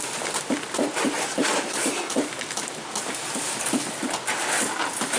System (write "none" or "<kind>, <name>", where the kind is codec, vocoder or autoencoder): none